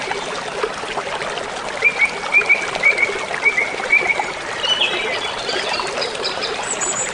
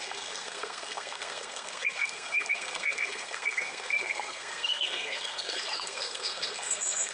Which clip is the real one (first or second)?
first